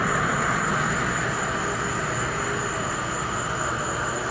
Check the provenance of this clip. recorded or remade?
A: recorded